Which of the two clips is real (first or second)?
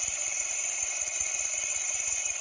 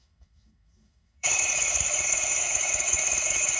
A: first